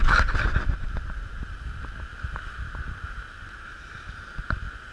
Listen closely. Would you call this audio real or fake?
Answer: real